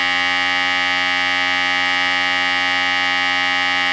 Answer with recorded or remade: recorded